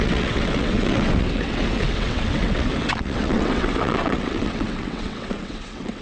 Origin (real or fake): fake